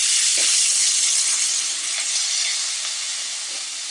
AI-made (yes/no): no